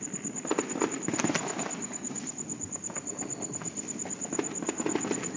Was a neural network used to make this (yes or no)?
no